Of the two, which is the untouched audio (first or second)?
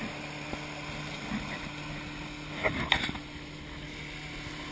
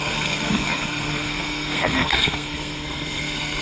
first